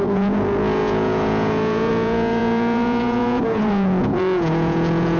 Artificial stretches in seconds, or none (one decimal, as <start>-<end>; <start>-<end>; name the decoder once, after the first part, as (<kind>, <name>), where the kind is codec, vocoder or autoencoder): 0.0-5.2 (vocoder, Vocos)